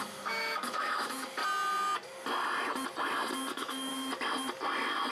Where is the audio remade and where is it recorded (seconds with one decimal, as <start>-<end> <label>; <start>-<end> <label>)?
0.0-1.4 remade; 1.4-3.5 recorded; 3.5-3.9 remade; 3.9-5.1 recorded